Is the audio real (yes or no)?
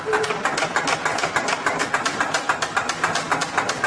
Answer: yes